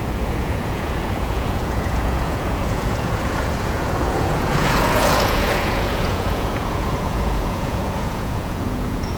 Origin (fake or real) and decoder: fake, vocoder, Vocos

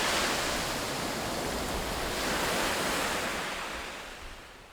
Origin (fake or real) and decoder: real